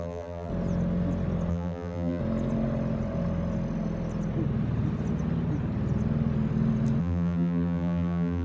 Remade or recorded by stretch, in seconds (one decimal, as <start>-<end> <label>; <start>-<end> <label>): 0.0-0.5 remade; 0.5-1.5 recorded; 1.5-2.2 remade; 2.2-7.0 recorded; 7.0-8.4 remade